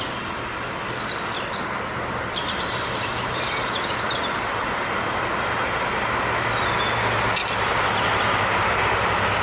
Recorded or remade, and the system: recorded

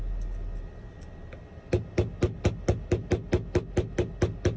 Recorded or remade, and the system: recorded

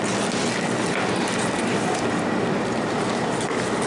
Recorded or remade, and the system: recorded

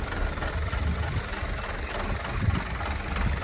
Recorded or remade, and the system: recorded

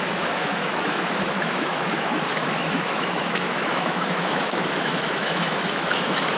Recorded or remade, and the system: remade, autoencoder, DAC-VAE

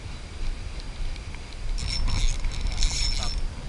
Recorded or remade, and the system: recorded